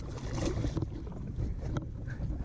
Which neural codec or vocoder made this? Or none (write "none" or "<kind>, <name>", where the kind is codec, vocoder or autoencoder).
none